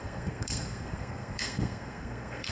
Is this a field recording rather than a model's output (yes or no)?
no